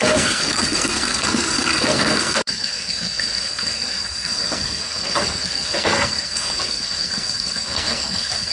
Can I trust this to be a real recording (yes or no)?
no